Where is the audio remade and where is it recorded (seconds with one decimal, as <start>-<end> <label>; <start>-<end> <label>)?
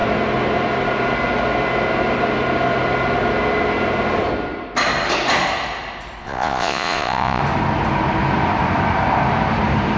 0.0-6.2 recorded; 6.2-7.4 remade; 7.4-10.0 recorded